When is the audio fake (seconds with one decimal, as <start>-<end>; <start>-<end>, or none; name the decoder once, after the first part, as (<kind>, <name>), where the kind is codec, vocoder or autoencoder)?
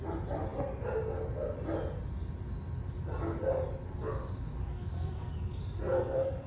4.7-6.5 (codec, SNAC)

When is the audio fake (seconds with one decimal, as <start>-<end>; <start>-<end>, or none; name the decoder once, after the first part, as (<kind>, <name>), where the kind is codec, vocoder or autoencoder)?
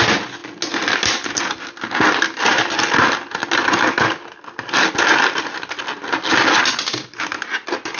none